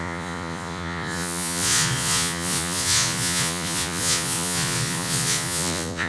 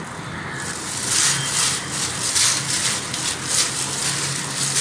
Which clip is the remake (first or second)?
first